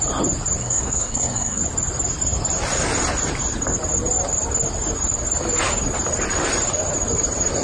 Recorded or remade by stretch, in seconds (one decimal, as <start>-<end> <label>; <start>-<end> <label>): 0.0-0.6 recorded; 0.6-1.6 remade; 1.6-7.6 recorded